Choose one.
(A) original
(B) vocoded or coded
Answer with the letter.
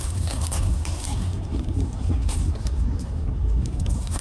B